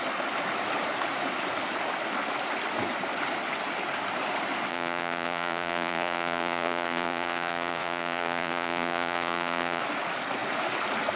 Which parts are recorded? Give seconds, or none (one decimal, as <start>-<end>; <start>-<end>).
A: 0.0-4.7; 9.8-11.2